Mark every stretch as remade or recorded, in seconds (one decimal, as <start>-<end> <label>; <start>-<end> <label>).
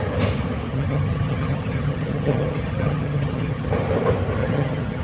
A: 0.0-0.7 recorded; 0.7-3.7 remade; 3.7-4.4 recorded; 4.4-5.0 remade